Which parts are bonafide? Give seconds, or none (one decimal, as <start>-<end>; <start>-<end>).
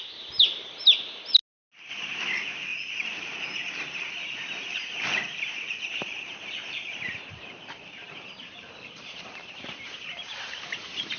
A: 1.4-1.9; 2.7-3.8